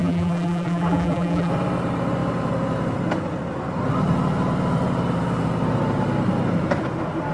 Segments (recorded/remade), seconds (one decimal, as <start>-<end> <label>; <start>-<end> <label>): 0.0-1.5 remade; 1.5-7.3 recorded